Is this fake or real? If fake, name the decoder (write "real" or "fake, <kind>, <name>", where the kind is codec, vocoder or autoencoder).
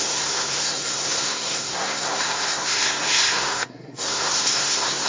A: fake, codec, SNAC